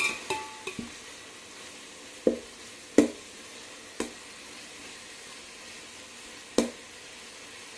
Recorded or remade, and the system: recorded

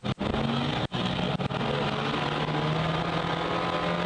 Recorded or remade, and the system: recorded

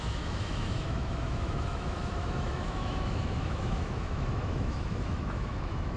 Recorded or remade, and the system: remade, autoencoder, DAC-VAE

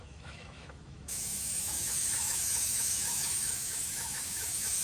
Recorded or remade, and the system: remade, autoencoder, DAC-VAE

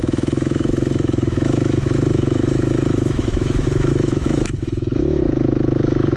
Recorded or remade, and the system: remade, autoencoder, DAC-VAE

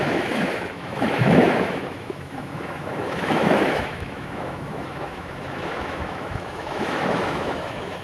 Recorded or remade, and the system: remade, autoencoder, DAC-VAE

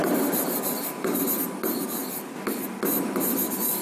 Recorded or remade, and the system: recorded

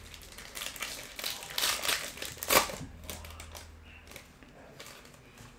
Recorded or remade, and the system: recorded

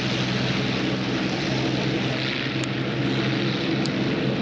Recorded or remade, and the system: recorded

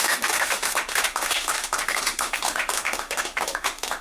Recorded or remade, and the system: remade, autoencoder, DAC-VAE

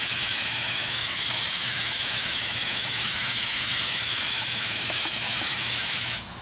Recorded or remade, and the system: remade, autoencoder, DAC-VAE